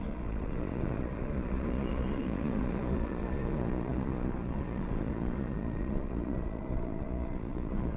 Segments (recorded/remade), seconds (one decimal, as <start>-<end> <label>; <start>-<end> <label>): 0.0-8.0 remade